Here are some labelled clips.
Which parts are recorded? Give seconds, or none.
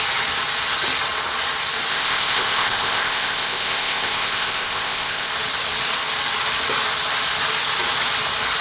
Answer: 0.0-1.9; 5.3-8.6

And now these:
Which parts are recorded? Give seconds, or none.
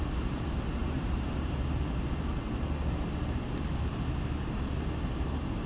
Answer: 0.0-0.8; 1.6-5.7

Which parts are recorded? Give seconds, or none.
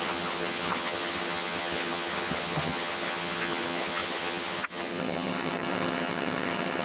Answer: none